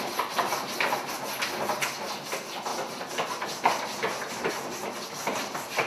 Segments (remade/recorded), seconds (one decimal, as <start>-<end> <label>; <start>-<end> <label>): 0.0-5.9 recorded